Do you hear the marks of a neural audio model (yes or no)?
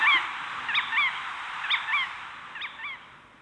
no